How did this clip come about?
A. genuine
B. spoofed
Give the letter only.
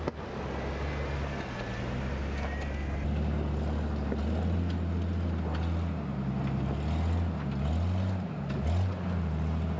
A